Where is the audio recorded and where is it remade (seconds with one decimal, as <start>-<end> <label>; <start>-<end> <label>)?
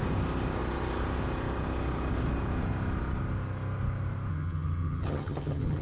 0.0-4.3 recorded; 4.3-5.8 remade